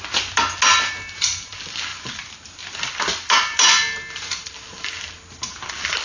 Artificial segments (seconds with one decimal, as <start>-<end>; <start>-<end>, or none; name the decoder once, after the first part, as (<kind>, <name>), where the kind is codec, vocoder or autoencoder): none